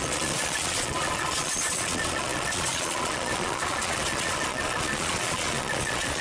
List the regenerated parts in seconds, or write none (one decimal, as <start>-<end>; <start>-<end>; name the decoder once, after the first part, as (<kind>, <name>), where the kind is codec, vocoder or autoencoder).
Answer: 0.0-6.2 (vocoder, Vocos)